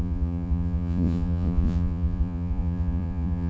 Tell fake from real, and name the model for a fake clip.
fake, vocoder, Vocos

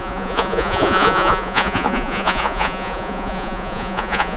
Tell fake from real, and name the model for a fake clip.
fake, vocoder, Vocos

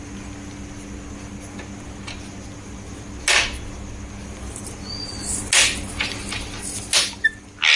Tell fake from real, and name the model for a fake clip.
real